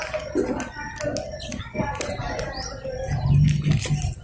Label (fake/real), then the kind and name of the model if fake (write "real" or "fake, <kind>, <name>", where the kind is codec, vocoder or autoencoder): real